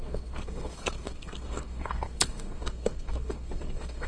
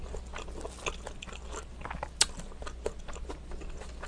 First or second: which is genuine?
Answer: second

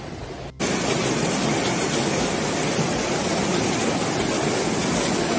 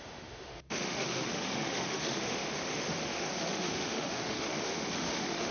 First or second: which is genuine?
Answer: first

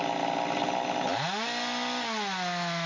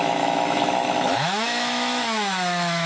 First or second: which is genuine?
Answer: first